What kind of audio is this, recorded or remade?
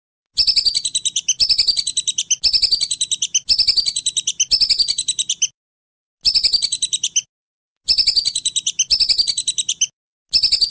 recorded